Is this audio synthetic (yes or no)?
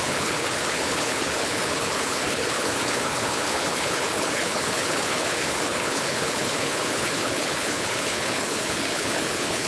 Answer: yes